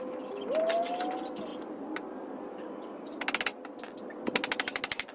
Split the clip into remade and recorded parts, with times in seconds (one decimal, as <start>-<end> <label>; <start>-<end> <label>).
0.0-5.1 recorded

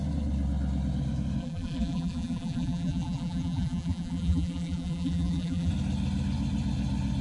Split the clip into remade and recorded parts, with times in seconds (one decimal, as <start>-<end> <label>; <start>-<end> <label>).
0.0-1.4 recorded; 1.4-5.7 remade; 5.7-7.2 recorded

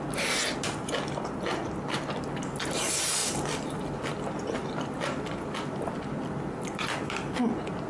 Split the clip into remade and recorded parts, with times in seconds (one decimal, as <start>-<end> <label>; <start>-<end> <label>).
0.0-3.2 recorded; 3.2-7.4 remade; 7.4-7.9 recorded

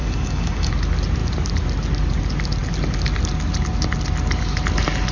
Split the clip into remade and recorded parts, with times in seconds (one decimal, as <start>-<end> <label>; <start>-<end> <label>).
0.0-0.7 remade; 0.7-5.1 recorded

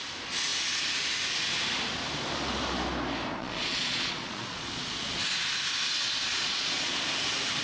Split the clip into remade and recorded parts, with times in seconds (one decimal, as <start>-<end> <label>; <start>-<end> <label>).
0.0-3.4 recorded; 3.4-5.2 remade; 5.2-6.3 recorded; 6.3-7.1 remade; 7.1-7.6 recorded

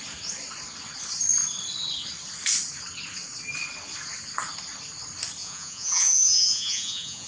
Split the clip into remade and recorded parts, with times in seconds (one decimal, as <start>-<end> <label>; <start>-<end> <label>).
0.0-5.4 recorded; 5.4-7.3 remade

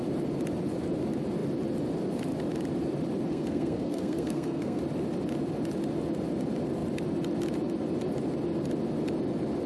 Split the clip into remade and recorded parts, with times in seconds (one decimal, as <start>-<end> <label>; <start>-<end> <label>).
0.0-3.3 recorded; 3.3-4.8 remade; 4.8-9.7 recorded